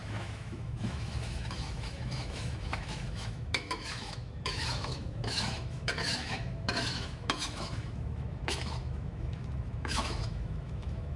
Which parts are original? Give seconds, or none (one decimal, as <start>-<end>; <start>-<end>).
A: none